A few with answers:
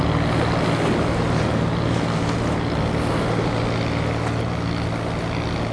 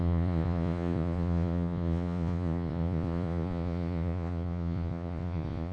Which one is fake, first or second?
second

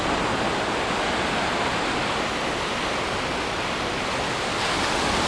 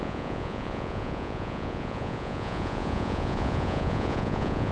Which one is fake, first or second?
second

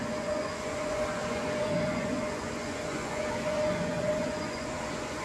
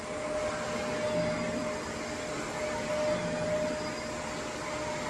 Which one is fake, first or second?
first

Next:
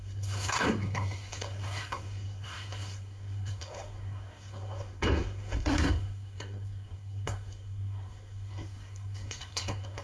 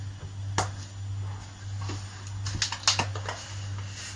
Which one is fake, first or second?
first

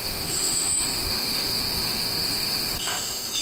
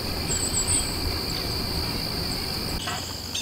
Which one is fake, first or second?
first